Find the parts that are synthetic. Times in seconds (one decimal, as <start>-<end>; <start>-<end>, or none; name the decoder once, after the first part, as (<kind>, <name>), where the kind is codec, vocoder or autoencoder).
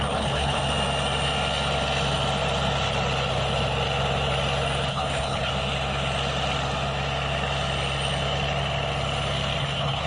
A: 0.0-0.6 (codec, HILCodec); 4.9-5.5; 9.6-10.1